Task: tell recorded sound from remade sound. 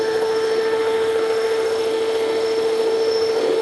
remade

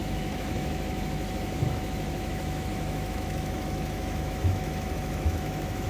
remade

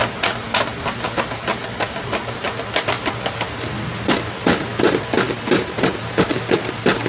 recorded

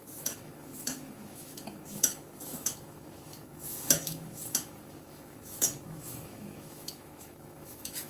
remade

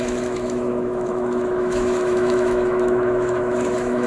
remade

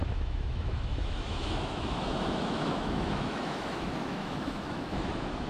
remade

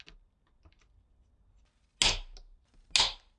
recorded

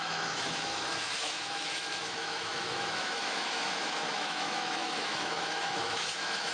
remade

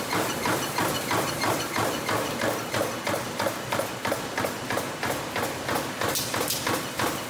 recorded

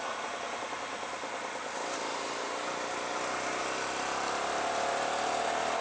recorded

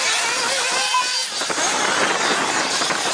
recorded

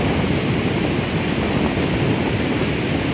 recorded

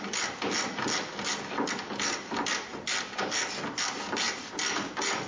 recorded